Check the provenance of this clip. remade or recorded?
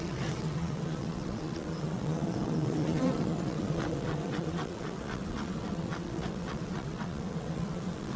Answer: remade